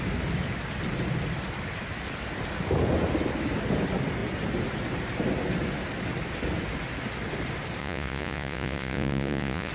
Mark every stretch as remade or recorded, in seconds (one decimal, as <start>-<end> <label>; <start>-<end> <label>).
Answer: 0.0-7.8 recorded; 7.8-9.7 remade